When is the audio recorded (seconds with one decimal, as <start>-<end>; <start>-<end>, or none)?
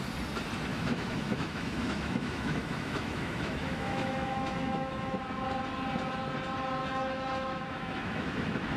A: 0.0-0.7; 5.2-6.8